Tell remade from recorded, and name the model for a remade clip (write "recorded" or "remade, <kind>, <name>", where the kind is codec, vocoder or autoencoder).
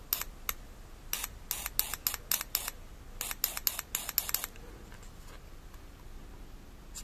recorded